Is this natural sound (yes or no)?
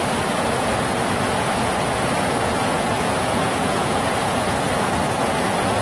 no